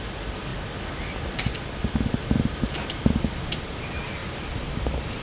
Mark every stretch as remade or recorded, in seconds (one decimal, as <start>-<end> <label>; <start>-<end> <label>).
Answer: 0.0-5.2 recorded

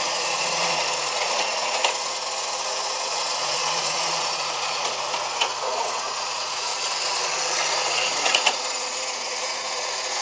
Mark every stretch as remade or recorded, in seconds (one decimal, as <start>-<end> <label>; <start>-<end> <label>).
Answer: 0.0-6.7 remade; 6.7-7.7 recorded; 7.7-10.2 remade

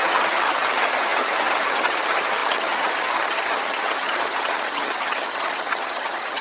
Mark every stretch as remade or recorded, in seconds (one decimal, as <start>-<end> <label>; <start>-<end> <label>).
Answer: 0.0-6.4 remade

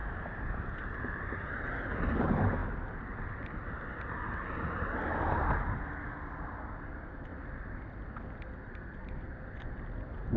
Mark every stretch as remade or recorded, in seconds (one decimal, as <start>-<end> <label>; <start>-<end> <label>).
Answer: 0.0-10.4 recorded